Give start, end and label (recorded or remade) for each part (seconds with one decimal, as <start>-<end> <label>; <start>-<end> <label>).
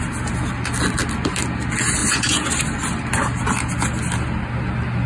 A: 0.0-2.0 recorded; 2.0-2.6 remade; 2.6-5.1 recorded